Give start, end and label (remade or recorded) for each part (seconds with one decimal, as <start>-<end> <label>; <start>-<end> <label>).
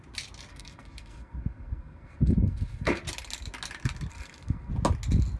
0.0-0.5 recorded; 0.5-3.0 remade; 3.0-4.1 recorded; 4.1-4.7 remade; 4.7-5.4 recorded